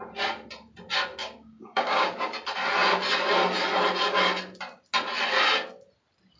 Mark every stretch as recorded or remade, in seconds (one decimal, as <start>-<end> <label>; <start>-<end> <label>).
0.0-1.2 recorded; 1.2-2.1 remade; 2.1-6.4 recorded